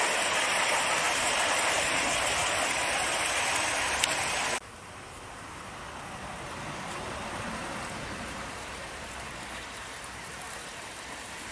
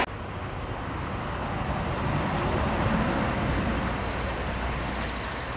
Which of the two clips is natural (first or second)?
second